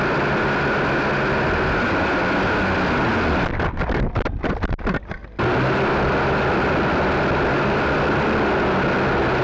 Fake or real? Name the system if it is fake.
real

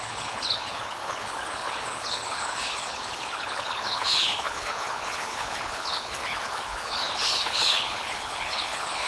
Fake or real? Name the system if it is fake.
fake, codec, HILCodec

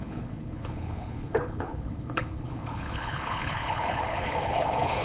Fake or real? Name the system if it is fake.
fake, codec, HILCodec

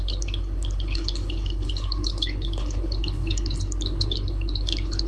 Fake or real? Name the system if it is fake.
fake, codec, HILCodec